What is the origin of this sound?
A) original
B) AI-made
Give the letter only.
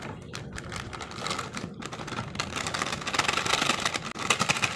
A